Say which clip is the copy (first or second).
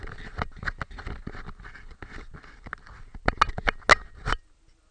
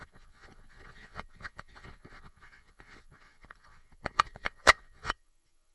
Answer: second